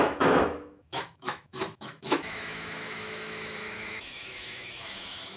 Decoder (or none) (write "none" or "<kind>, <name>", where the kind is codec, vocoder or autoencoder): autoencoder, DAC-VAE